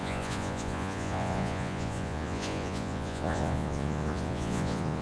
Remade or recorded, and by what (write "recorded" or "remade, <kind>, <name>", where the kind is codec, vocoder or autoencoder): remade, vocoder, Vocos